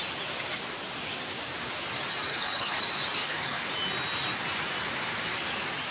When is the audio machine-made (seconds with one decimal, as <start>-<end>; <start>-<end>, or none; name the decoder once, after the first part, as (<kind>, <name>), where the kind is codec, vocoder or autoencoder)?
2.3-2.8 (codec, HILCodec); 3.2-3.7